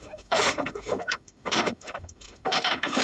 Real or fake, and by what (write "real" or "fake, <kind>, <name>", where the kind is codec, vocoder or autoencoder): fake, autoencoder, DAC-VAE